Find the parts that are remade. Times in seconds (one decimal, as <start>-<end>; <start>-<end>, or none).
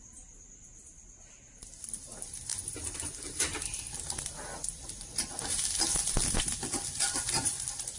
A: none